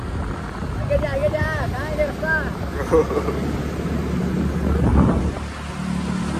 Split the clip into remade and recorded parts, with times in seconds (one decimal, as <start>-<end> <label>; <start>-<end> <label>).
0.0-6.4 recorded